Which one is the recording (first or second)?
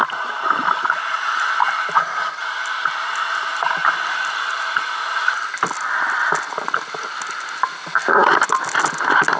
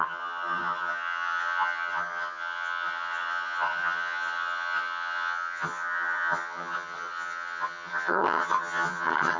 first